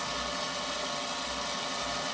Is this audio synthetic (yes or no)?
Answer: no